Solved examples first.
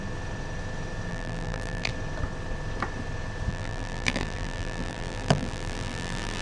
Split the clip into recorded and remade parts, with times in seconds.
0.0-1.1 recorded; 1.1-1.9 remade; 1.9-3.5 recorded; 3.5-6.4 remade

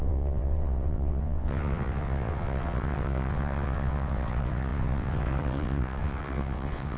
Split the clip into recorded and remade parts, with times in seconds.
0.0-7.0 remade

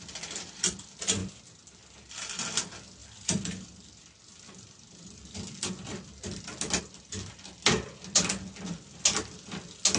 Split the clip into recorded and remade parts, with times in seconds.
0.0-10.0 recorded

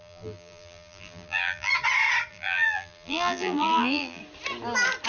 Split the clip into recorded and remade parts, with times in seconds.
0.0-1.7 remade; 1.7-2.3 recorded; 2.3-4.2 remade; 4.2-5.1 recorded

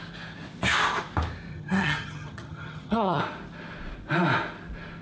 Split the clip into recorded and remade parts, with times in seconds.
0.0-1.5 recorded; 1.5-3.2 remade; 3.2-5.0 recorded

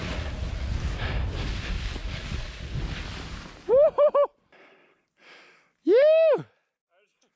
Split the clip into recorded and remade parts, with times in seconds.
0.0-0.7 remade; 0.7-2.0 recorded; 2.0-2.7 remade; 2.7-7.4 recorded